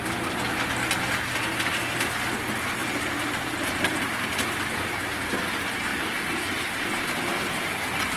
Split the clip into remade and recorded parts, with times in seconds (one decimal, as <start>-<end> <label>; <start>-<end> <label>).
0.0-8.2 recorded